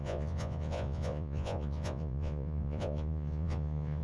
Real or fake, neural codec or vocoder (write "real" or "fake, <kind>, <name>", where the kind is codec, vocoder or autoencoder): fake, vocoder, Vocos